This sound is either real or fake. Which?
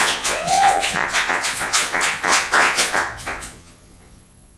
fake